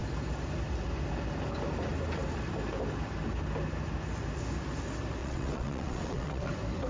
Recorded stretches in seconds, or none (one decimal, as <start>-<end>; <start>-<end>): 0.0-5.2; 6.5-6.9